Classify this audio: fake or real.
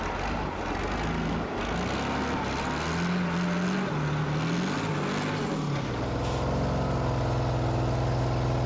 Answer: real